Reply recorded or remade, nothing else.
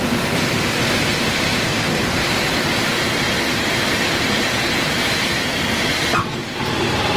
remade